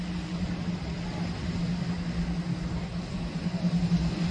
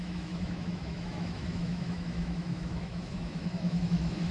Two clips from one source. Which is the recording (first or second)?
first